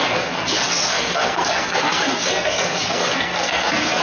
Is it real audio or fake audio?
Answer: fake